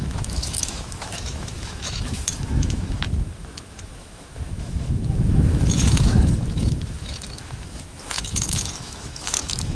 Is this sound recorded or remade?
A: remade